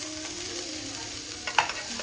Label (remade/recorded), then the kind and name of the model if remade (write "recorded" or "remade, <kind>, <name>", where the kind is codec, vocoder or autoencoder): recorded